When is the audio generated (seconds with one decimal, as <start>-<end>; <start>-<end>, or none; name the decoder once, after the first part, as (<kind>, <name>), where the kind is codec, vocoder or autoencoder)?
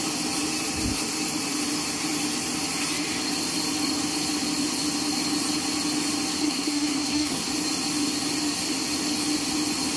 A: 6.4-7.5 (codec, SNAC)